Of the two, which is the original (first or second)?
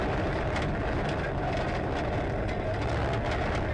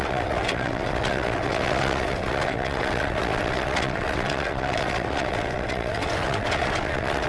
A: first